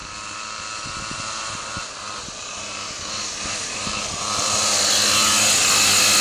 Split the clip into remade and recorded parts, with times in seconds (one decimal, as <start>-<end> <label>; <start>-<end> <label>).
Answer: 0.0-6.2 recorded